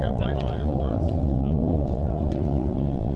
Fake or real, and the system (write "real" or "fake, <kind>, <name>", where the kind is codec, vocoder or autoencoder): fake, vocoder, WaveNeXt